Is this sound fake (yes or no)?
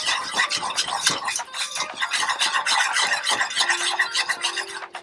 no